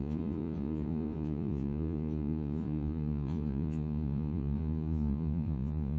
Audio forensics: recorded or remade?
remade